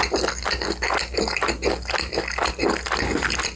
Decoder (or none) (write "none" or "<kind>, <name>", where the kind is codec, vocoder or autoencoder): none